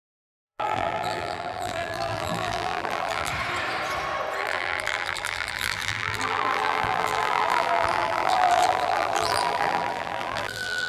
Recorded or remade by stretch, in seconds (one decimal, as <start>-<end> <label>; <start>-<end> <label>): 0.0-3.3 remade; 3.3-4.4 recorded; 4.4-10.9 remade